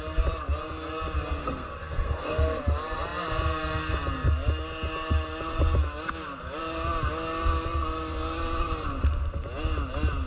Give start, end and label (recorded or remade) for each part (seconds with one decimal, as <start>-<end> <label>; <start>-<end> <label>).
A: 0.0-1.4 recorded; 1.4-2.6 remade; 2.6-10.3 recorded